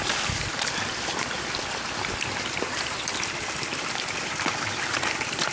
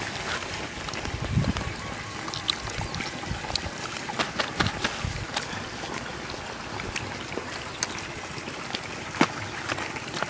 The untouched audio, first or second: second